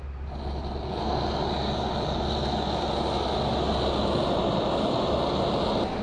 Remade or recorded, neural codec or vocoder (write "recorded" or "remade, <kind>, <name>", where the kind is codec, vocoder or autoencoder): recorded